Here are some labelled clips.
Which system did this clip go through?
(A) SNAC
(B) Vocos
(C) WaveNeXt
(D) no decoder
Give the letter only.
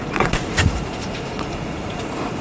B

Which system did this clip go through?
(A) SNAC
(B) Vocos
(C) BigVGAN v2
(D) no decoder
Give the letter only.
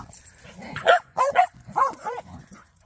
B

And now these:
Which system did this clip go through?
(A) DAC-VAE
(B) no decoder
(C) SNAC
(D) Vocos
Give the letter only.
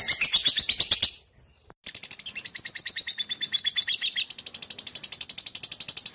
B